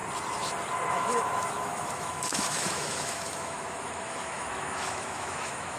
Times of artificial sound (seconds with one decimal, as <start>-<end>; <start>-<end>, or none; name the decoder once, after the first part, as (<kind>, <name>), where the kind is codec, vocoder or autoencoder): 0.9-5.8 (autoencoder, DAC-VAE)